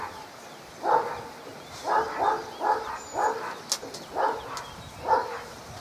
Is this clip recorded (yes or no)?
yes